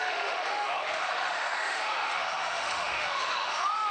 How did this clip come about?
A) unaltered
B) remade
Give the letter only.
B